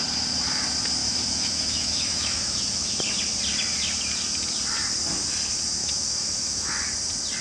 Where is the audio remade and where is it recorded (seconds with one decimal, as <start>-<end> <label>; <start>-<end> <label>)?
0.0-1.0 recorded; 1.0-3.0 remade; 3.0-5.8 recorded; 5.8-6.7 remade; 6.7-7.4 recorded

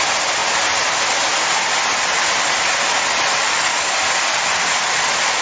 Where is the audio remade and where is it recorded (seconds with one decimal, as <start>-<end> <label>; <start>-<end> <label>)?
0.0-5.4 recorded